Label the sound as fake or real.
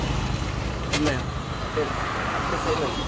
real